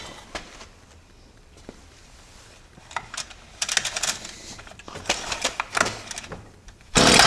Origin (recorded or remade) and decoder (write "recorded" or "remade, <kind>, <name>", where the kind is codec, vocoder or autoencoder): recorded